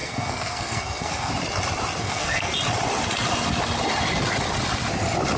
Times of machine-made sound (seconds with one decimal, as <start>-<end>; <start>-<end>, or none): 0.0-1.3; 2.0-2.5